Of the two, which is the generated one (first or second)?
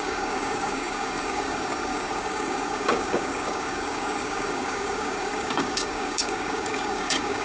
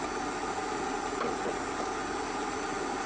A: first